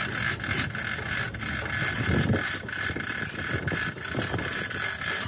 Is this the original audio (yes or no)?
yes